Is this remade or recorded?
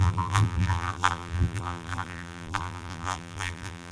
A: remade